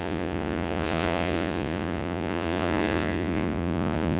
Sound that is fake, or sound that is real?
fake